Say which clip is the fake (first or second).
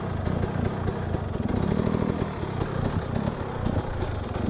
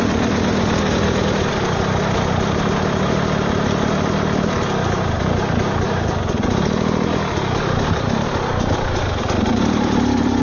second